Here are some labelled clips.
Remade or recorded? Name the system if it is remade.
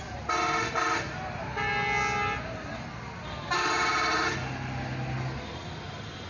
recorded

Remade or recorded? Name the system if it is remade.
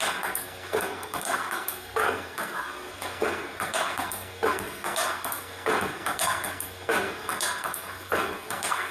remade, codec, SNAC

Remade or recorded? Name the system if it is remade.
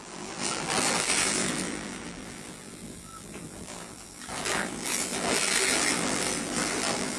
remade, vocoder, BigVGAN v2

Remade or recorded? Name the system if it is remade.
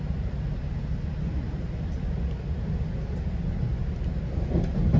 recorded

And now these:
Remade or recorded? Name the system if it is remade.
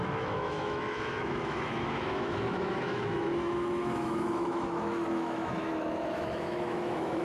remade, autoencoder, DAC-VAE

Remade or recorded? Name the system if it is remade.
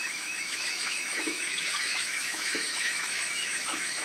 remade, autoencoder, DAC-VAE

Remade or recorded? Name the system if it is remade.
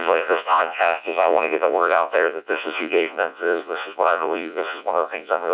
remade, vocoder, Vocos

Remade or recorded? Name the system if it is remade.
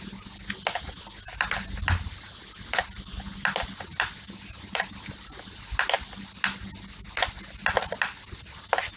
recorded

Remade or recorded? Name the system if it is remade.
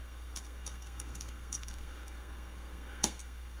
remade, codec, SNAC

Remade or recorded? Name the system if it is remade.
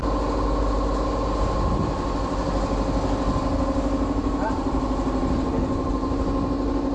recorded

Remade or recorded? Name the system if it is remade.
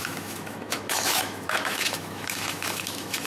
remade, autoencoder, DAC-VAE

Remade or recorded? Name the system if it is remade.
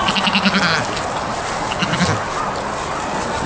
recorded